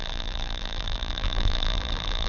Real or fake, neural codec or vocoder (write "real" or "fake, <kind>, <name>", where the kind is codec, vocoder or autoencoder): fake, vocoder, BigVGAN v2